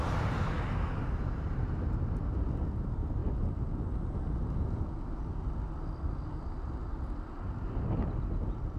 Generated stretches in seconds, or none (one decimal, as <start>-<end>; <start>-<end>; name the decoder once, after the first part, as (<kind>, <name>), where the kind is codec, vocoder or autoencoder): none